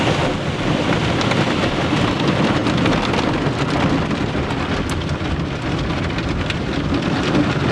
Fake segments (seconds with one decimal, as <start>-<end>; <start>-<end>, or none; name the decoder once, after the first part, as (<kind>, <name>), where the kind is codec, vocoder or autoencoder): none